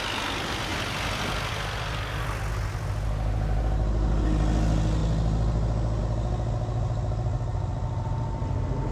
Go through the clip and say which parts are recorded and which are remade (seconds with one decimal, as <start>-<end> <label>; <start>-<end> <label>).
0.0-8.9 recorded